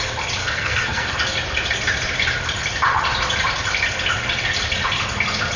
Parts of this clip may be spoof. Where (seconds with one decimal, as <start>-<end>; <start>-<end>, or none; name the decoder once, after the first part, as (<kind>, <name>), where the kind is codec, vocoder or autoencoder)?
0.4-1.1 (codec, SNAC)